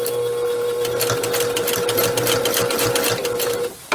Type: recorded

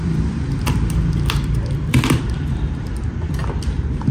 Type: remade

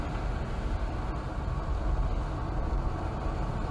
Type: recorded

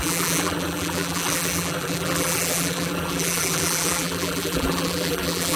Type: remade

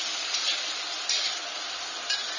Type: recorded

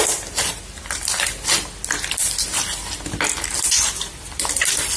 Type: recorded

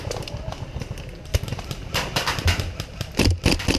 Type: remade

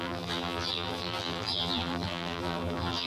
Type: remade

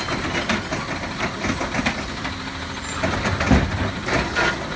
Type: recorded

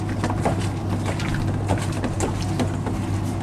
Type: recorded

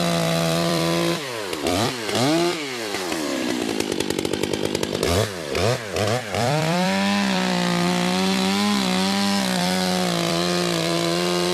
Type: remade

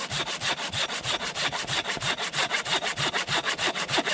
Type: recorded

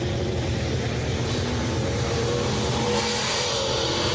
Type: remade